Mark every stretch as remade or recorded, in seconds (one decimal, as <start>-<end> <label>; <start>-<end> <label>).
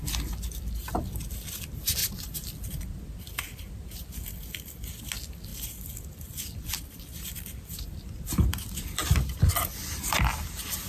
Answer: 0.0-2.0 recorded; 2.0-2.7 remade; 2.7-5.5 recorded; 5.5-9.5 remade; 9.5-10.9 recorded